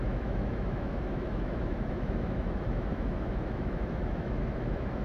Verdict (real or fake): fake